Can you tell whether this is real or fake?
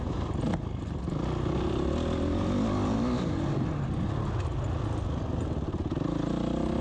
real